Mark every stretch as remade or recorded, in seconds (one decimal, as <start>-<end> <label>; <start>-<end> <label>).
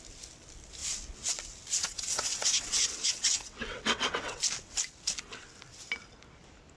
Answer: 0.0-1.8 recorded; 1.8-4.4 remade; 4.4-6.8 recorded